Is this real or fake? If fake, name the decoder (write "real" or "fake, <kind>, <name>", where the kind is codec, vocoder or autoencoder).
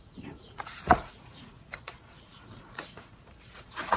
fake, vocoder, Vocos